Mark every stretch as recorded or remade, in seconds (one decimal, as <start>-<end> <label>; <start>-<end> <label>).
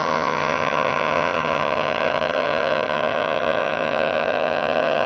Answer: 0.0-5.1 remade